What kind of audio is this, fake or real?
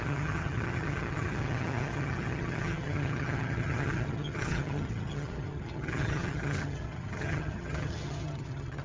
fake